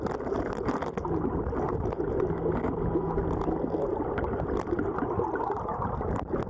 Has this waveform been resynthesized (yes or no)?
no